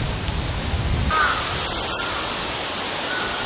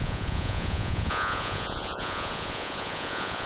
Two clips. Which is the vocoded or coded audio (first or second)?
second